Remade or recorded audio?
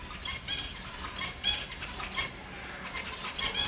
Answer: recorded